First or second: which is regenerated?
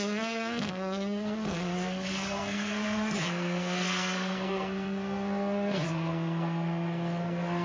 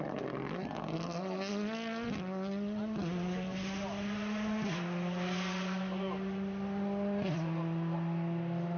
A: first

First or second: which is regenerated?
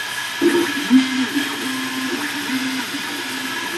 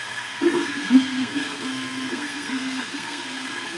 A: second